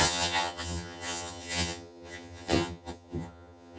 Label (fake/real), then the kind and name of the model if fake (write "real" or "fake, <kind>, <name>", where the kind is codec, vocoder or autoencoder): fake, vocoder, HiFi-GAN